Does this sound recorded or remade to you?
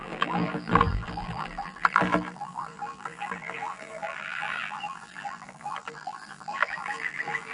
remade